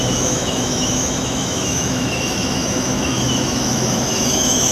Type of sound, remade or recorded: remade